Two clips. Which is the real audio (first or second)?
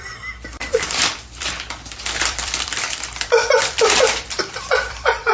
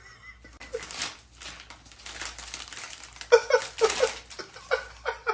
second